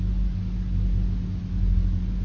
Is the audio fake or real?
real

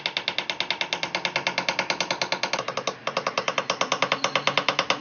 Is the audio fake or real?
real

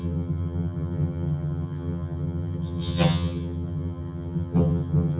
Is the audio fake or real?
fake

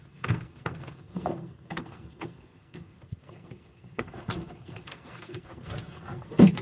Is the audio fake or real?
fake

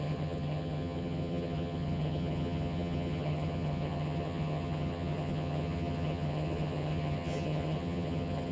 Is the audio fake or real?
fake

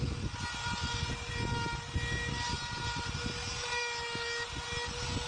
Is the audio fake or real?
real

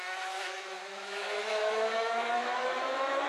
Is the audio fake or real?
fake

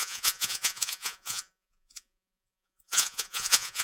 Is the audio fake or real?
fake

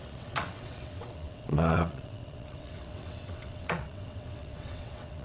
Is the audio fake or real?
fake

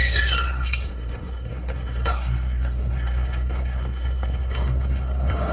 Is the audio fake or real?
fake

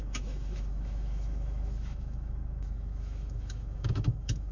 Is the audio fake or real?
fake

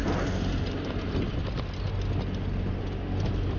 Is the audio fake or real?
real